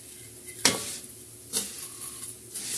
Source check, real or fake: real